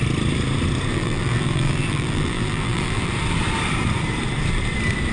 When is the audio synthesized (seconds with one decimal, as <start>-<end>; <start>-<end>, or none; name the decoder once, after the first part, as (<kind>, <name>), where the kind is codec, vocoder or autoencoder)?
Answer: 0.9-3.1 (vocoder, BigVGAN v2)